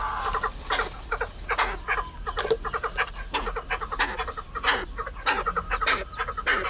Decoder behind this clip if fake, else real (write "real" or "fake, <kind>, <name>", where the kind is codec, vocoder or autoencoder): real